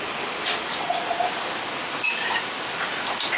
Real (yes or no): yes